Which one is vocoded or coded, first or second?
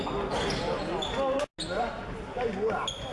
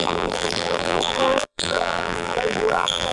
second